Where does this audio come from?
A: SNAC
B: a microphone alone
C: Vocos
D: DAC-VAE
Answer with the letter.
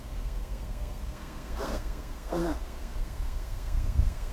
A